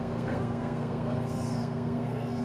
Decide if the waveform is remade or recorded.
remade